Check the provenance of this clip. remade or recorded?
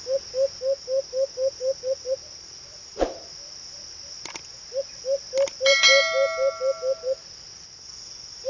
recorded